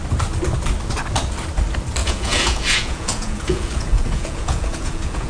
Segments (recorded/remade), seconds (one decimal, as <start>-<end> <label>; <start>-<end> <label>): 0.0-2.0 recorded; 2.0-5.3 remade